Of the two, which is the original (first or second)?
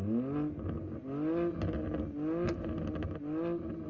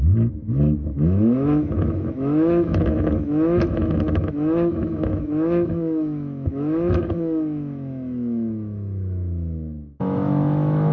first